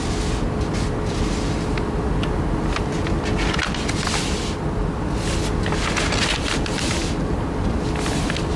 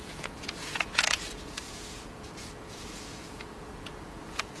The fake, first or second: second